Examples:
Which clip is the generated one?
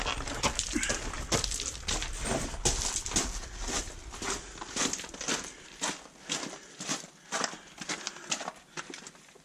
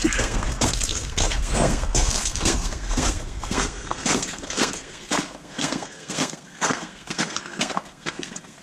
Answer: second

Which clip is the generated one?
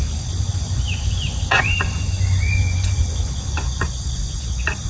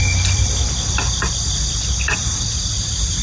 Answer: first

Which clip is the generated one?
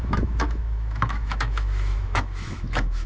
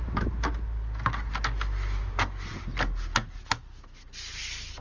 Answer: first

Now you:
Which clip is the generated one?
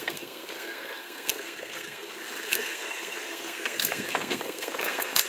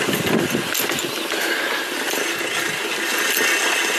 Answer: first